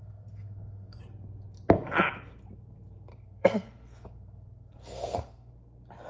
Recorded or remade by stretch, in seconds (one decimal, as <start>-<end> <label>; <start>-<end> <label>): 0.0-1.0 remade; 1.0-3.1 recorded; 3.1-5.5 remade; 5.5-6.1 recorded